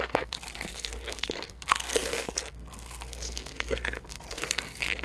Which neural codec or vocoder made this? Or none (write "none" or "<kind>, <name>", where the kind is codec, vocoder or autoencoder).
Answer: codec, SNAC